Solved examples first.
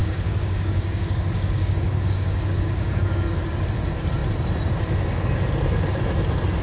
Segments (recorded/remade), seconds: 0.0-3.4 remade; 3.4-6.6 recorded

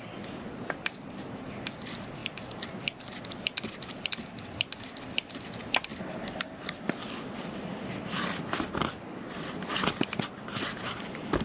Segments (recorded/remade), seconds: 0.0-5.9 recorded; 5.9-6.8 remade; 6.8-11.4 recorded

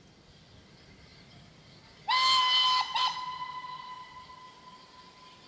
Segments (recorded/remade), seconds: 0.0-5.5 recorded

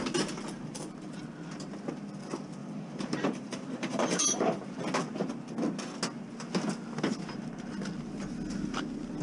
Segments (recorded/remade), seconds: 0.0-0.5 recorded; 0.5-1.2 remade; 1.2-2.6 recorded; 2.6-4.8 remade; 4.8-9.2 recorded

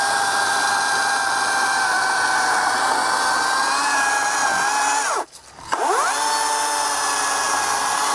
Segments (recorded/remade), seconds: 0.0-8.1 recorded

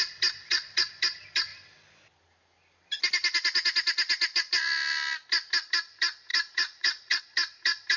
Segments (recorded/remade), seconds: 0.0-0.4 recorded; 0.4-0.9 remade; 0.9-6.3 recorded; 6.3-7.2 remade; 7.2-8.0 recorded

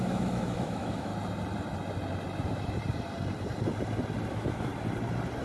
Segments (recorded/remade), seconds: 0.0-1.1 remade; 1.1-4.3 recorded; 4.3-4.7 remade; 4.7-5.4 recorded

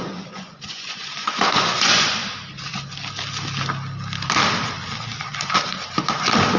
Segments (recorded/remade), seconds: 0.0-2.2 remade; 2.2-6.6 recorded